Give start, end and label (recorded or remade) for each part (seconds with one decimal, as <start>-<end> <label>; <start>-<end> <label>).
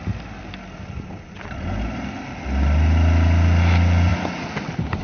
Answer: 0.0-5.0 recorded